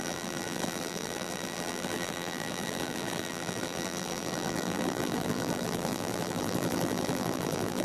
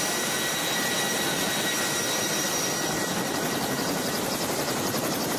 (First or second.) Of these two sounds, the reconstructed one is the first